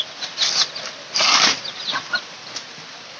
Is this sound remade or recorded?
recorded